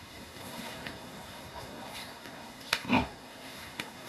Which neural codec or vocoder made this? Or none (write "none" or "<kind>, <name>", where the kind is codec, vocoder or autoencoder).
codec, SNAC